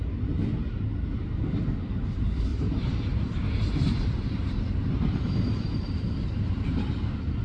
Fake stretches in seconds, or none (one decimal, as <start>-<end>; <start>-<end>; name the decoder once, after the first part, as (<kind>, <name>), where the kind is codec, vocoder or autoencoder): 2.5-6.9 (vocoder, BigVGAN v2)